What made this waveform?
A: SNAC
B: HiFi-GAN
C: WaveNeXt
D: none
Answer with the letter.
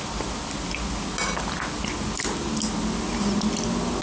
D